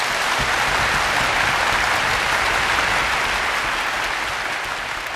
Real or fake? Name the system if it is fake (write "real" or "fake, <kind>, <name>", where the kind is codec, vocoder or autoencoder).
real